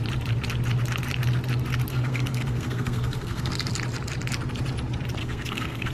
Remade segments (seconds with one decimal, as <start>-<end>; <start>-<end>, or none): 1.9-3.5; 5.2-5.9